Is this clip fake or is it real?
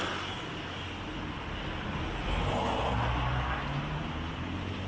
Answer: real